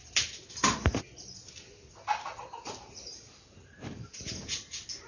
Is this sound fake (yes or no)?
no